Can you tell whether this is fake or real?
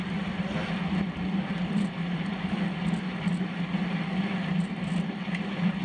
real